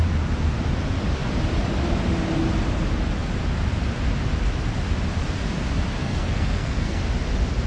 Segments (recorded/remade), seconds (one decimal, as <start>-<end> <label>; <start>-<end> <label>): 0.0-6.0 recorded; 6.0-7.0 remade; 7.0-7.7 recorded